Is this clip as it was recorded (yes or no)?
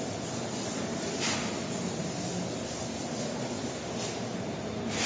yes